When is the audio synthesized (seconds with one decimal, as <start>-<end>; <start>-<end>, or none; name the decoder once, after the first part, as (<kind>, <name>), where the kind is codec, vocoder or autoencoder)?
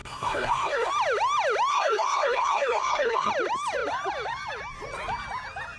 0.0-0.9 (codec, SNAC); 1.7-3.3